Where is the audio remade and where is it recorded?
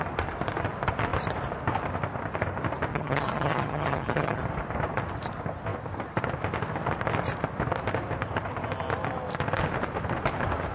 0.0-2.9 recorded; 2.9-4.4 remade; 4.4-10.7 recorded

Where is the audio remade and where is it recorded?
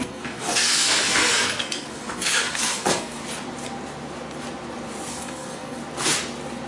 0.0-3.2 remade; 3.2-5.1 recorded; 5.1-5.8 remade; 5.8-6.7 recorded